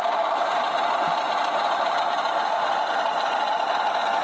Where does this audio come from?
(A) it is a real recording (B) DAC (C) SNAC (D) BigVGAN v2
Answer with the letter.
A